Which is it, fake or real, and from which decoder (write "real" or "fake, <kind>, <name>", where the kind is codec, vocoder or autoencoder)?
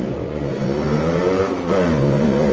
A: fake, vocoder, Vocos